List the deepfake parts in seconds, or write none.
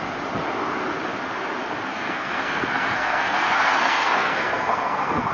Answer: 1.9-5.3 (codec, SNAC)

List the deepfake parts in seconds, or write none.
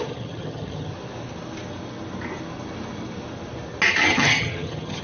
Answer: 0.0-0.9 (vocoder, HiFi-GAN); 3.9-5.0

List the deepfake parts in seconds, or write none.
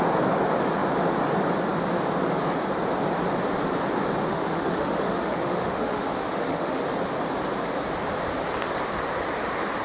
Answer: 4.3-6.8 (autoencoder, DAC-VAE)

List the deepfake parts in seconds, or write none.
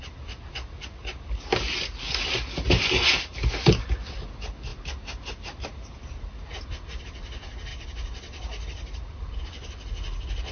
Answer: none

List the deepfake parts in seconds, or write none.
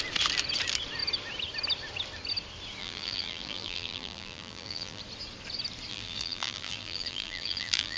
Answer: 2.8-5.0 (vocoder, BigVGAN v2); 5.9-8.0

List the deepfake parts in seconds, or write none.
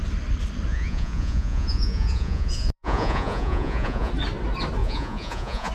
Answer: 0.7-4.1 (vocoder, Vocos); 4.8-5.7